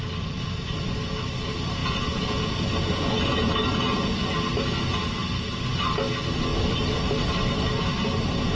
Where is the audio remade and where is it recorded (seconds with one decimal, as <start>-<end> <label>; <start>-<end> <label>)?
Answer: 0.0-1.8 recorded; 1.8-3.5 remade; 3.5-8.5 recorded